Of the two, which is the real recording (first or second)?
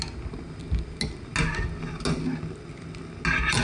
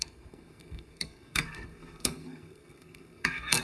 first